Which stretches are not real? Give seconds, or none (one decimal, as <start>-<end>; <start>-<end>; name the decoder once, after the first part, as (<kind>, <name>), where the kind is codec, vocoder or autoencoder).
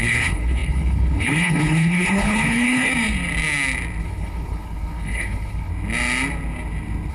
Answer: 0.0-2.9 (codec, HILCodec); 4.0-5.7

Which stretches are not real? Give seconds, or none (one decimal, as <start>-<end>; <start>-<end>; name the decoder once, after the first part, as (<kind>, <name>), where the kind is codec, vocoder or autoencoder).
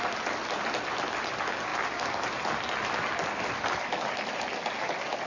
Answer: none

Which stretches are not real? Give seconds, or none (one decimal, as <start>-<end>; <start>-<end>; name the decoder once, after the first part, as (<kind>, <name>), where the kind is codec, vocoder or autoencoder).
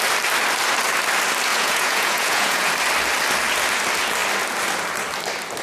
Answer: 1.5-2.7 (vocoder, Vocos)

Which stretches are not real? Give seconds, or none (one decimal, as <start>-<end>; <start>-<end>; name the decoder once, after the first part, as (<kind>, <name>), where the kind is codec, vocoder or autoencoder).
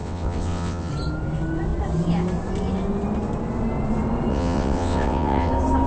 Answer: 0.0-0.9 (vocoder, WaveNeXt); 4.3-5.5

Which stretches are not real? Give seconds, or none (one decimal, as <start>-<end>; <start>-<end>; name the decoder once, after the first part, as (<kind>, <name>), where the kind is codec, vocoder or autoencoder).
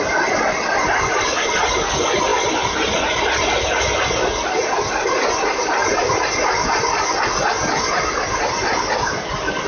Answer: none